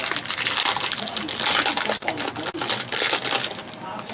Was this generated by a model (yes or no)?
no